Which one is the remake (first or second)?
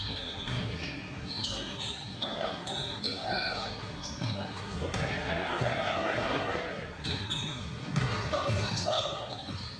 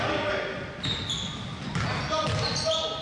first